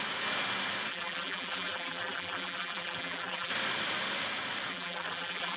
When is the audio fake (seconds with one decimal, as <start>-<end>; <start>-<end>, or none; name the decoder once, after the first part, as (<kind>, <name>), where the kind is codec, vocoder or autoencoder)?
0.9-3.5 (vocoder, BigVGAN v2); 4.7-5.6